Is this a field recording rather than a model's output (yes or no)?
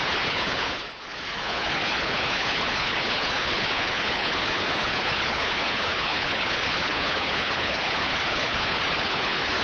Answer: no